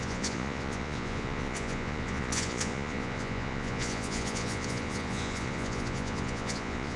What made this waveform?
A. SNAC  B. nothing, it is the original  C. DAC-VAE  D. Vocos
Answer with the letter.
D